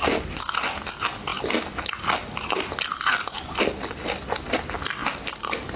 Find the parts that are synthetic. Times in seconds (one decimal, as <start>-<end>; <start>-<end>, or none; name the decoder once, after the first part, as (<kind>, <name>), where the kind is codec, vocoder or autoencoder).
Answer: none